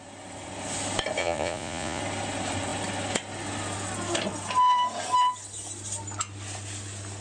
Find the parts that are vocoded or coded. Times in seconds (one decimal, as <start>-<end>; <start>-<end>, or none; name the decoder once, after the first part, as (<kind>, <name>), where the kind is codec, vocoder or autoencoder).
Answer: 1.2-2.0 (vocoder, Vocos)